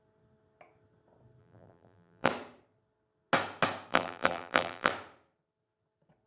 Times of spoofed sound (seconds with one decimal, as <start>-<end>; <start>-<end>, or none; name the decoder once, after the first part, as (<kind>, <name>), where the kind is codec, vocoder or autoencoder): 1.4-2.3 (vocoder, BigVGAN v2); 3.9-4.9